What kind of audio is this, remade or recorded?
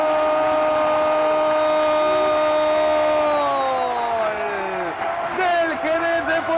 recorded